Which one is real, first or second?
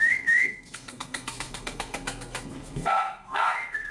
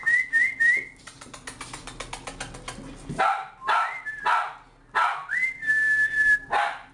second